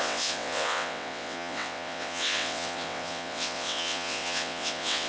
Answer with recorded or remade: remade